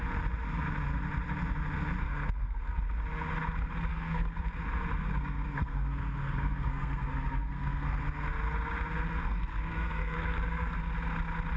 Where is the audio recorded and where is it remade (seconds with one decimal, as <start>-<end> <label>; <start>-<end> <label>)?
0.0-2.0 recorded; 2.0-2.8 remade; 2.8-3.9 recorded; 3.9-4.4 remade; 4.4-5.0 recorded; 5.0-8.0 remade; 8.0-9.2 recorded; 9.2-10.8 remade; 10.8-11.6 recorded